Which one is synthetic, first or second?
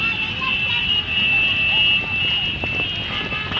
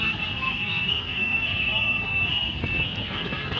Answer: second